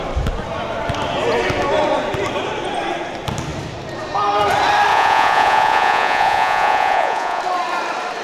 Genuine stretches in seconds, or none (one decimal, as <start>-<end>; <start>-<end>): 0.0-4.9; 7.4-8.2